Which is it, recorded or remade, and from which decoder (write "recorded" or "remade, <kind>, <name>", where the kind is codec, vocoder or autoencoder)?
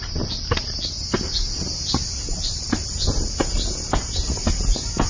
recorded